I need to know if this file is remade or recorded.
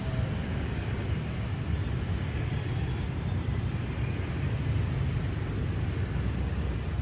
recorded